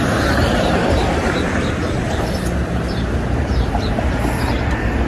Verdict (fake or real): fake